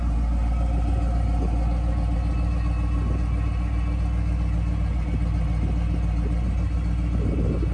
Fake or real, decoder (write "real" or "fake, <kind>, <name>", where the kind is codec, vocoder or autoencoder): real